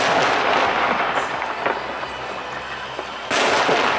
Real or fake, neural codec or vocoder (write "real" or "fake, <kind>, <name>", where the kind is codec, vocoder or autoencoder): real